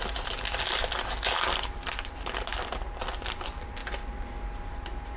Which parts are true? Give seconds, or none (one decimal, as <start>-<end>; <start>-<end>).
0.0-5.2